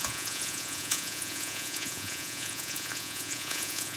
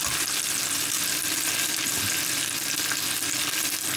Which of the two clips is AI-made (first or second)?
first